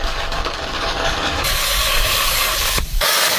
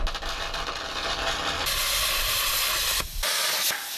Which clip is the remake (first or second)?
first